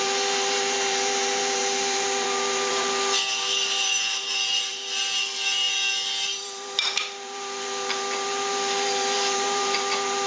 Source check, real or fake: fake